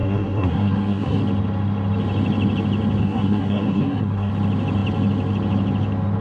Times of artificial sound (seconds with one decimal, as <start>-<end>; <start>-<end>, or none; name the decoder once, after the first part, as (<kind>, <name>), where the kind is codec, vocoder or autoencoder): 0.0-1.2 (codec, SNAC); 3.0-4.3